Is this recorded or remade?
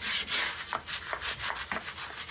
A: recorded